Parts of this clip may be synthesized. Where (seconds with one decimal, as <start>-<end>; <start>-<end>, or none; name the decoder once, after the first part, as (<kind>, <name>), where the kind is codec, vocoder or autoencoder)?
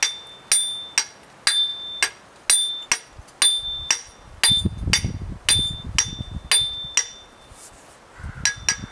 none